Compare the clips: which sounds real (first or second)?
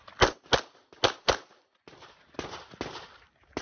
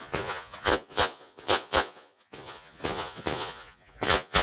first